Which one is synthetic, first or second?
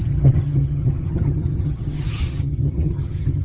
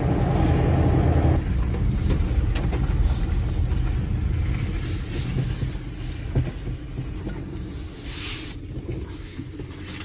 first